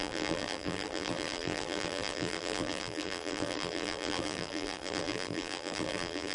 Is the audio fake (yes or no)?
yes